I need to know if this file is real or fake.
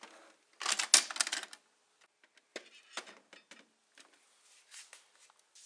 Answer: real